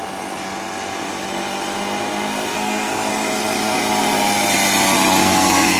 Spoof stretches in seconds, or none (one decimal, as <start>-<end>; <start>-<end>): 2.5-3.1; 5.2-5.8